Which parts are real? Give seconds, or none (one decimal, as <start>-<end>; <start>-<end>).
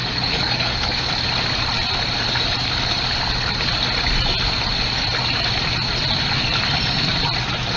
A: 1.1-7.8